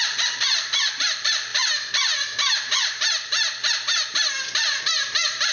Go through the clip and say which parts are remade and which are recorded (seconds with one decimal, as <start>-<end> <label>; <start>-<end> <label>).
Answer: 0.0-5.5 remade